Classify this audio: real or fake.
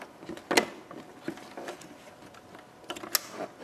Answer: real